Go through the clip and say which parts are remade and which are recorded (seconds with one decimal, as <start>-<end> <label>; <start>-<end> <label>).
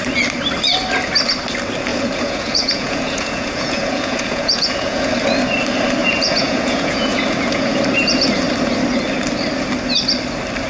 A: 0.0-1.9 recorded; 1.9-5.1 remade; 5.1-6.0 recorded; 6.0-7.8 remade; 7.8-10.7 recorded